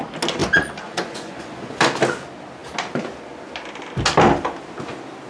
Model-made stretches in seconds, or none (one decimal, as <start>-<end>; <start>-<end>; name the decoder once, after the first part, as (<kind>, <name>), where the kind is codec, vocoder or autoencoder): 0.4-1.8 (vocoder, Vocos)